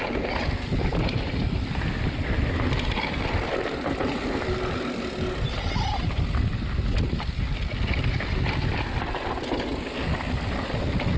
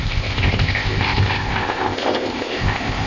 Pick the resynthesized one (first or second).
second